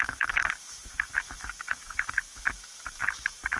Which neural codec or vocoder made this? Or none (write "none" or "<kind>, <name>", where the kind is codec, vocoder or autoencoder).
autoencoder, DAC-VAE